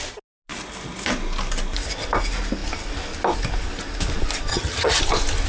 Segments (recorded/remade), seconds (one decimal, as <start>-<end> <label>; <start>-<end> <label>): 0.0-4.5 recorded; 4.5-5.0 remade; 5.0-5.5 recorded